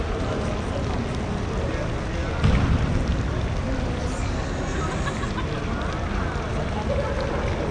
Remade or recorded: recorded